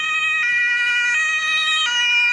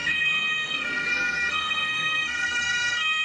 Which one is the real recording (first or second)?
first